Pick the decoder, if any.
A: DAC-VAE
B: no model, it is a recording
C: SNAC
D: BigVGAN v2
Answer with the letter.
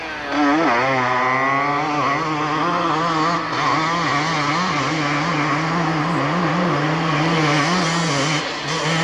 B